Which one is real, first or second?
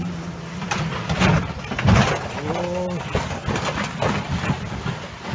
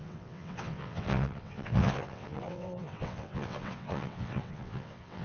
first